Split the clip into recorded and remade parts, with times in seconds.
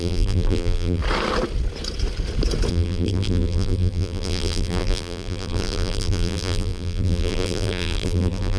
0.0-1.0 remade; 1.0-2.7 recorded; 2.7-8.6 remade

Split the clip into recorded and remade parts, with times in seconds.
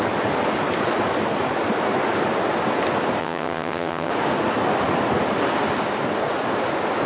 0.0-3.2 recorded; 3.2-4.1 remade; 4.1-7.1 recorded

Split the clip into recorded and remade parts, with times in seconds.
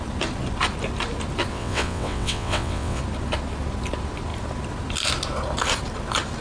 0.0-1.5 recorded; 1.5-3.0 remade; 3.0-6.4 recorded